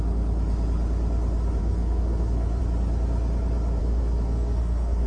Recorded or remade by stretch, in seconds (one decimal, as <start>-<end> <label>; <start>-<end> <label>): 0.0-1.6 recorded; 1.6-2.6 remade; 2.6-3.8 recorded; 3.8-5.1 remade

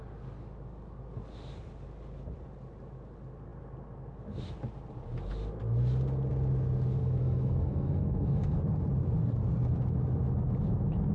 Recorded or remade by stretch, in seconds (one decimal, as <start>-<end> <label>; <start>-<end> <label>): 0.0-7.0 recorded; 7.0-8.6 remade; 8.6-11.1 recorded

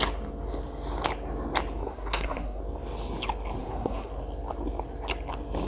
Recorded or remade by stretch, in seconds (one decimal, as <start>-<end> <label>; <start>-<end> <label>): 0.0-1.8 recorded; 1.8-2.6 remade; 2.6-3.6 recorded; 3.6-4.1 remade; 4.1-5.7 recorded

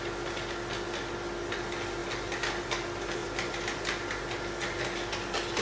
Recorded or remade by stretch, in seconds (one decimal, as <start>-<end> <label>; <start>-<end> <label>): 0.0-5.6 recorded